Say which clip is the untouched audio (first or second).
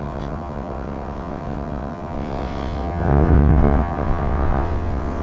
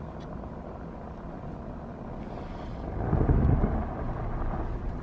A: second